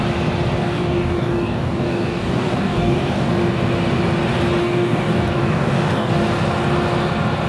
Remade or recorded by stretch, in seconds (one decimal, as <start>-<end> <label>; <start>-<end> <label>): 0.0-0.6 recorded; 0.6-3.3 remade; 3.3-4.6 recorded; 4.6-6.1 remade; 6.1-7.5 recorded